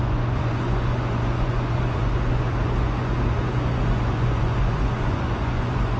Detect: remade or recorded remade